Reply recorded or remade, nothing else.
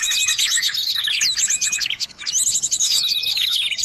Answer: remade